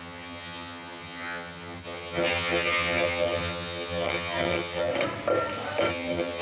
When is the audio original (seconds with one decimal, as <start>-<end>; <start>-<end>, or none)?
4.9-5.9